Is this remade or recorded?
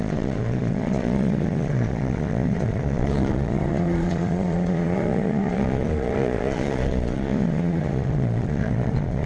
remade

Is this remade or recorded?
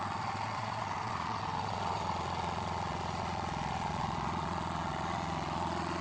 remade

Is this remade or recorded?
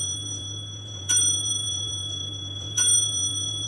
remade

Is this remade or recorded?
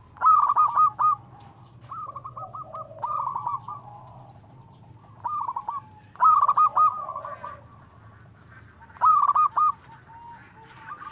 recorded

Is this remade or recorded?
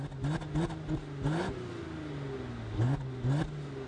recorded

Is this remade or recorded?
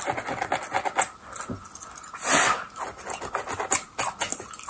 recorded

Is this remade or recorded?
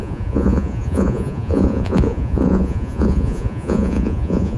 remade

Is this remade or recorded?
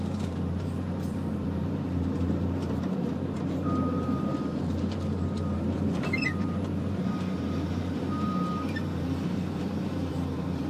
remade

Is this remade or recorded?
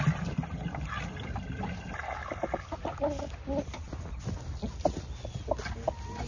recorded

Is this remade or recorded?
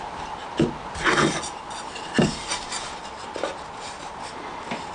recorded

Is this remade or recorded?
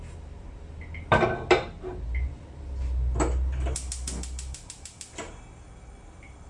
recorded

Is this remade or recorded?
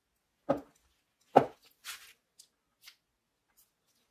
recorded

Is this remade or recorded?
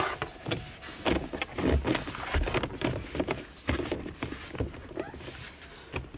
recorded